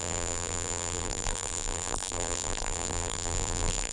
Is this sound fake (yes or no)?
yes